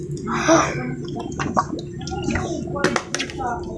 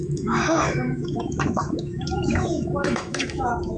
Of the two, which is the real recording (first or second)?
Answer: first